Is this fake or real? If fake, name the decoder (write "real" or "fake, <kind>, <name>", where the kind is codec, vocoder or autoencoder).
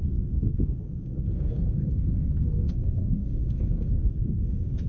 fake, codec, SNAC